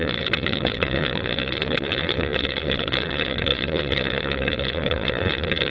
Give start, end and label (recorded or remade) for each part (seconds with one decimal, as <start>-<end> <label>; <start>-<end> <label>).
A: 0.0-5.7 remade